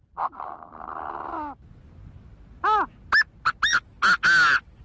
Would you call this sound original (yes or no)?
yes